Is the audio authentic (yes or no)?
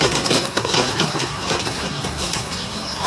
no